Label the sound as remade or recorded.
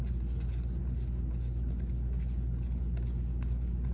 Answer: recorded